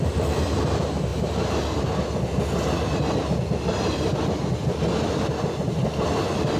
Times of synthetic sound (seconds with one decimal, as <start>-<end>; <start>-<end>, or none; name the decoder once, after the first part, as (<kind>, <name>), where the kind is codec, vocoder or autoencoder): none